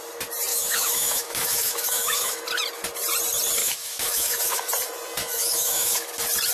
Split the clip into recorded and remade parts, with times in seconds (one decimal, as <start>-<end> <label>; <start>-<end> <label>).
0.0-0.5 recorded; 0.5-2.4 remade; 2.4-3.6 recorded; 3.6-4.7 remade; 4.7-5.2 recorded; 5.2-6.1 remade; 6.1-6.5 recorded